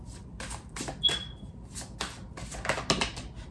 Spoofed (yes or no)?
no